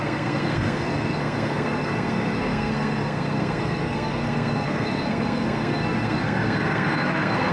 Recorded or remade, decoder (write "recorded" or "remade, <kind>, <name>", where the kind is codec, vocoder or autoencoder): remade, codec, SNAC